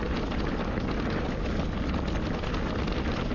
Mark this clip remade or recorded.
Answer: recorded